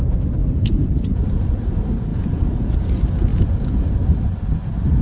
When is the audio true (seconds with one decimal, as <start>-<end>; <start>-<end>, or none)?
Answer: 0.0-0.4; 1.2-2.1; 2.7-3.3; 3.9-5.0